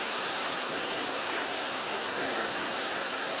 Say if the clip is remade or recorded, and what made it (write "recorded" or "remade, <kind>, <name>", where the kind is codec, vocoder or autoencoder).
remade, codec, SNAC